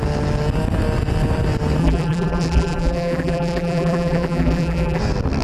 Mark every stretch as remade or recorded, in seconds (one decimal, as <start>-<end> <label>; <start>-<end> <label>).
0.0-1.8 recorded; 1.8-5.0 remade; 5.0-5.4 recorded